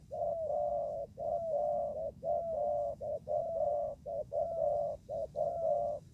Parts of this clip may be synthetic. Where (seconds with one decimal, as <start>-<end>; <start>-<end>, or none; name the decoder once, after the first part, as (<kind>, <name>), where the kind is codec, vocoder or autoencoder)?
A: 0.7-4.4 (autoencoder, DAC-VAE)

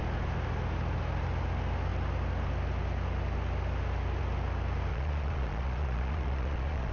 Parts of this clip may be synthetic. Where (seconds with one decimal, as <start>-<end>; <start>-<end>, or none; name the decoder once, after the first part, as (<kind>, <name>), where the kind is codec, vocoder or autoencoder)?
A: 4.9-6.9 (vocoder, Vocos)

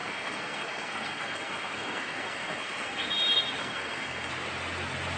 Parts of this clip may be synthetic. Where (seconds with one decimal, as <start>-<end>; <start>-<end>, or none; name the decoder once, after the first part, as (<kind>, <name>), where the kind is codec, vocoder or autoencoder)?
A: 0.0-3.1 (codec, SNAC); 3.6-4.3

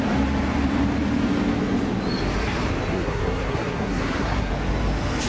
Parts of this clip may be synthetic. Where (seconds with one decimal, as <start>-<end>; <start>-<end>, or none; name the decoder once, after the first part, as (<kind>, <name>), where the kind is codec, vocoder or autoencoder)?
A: 2.9-4.5 (codec, SNAC)

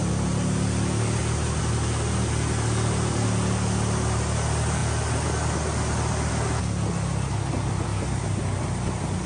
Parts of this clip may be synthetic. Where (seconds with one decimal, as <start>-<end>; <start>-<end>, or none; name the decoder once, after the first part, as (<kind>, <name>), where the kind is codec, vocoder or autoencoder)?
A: none